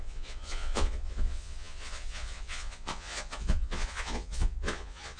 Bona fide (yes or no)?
no